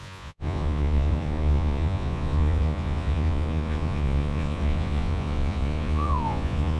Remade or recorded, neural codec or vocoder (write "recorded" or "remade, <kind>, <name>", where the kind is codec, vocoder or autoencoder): remade, vocoder, Vocos